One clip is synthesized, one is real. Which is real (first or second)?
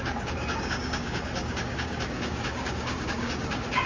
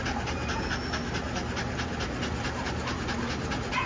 second